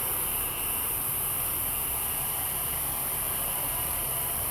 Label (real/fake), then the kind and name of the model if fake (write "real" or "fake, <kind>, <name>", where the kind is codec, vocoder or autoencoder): fake, vocoder, BigVGAN v2